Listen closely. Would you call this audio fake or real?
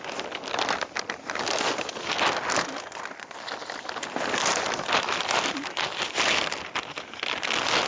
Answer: real